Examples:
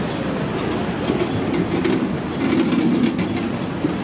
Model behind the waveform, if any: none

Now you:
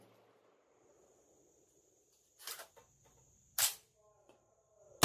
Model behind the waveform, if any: none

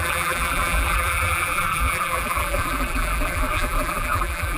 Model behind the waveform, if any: vocoder, BigVGAN v2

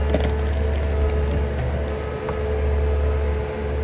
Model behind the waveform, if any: none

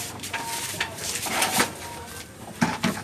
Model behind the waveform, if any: vocoder, BigVGAN v2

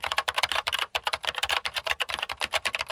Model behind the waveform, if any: vocoder, BigVGAN v2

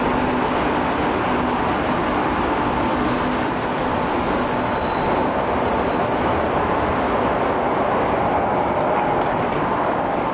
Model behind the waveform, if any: none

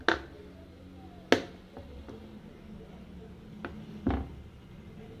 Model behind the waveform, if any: none